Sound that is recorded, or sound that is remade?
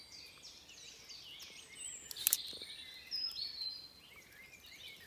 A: recorded